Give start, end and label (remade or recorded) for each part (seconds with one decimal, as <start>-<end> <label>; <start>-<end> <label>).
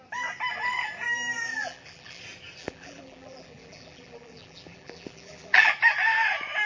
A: 0.0-1.5 recorded; 1.5-2.2 remade; 2.2-2.6 recorded; 2.6-5.7 remade; 5.7-6.7 recorded